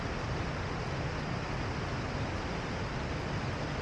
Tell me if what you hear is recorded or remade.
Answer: recorded